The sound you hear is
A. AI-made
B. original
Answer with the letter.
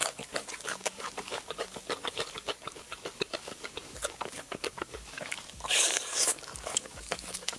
A